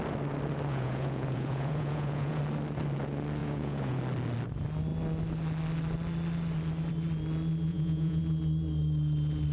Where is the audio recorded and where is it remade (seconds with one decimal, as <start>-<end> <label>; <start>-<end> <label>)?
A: 0.0-0.7 recorded; 0.7-2.4 remade; 2.4-3.4 recorded; 3.4-4.0 remade; 4.0-7.7 recorded; 7.7-8.2 remade; 8.2-9.5 recorded